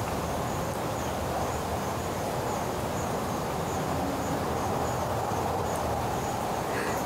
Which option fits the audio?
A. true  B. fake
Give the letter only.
B